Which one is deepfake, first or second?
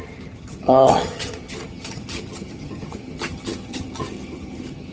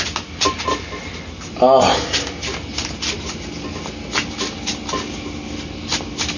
first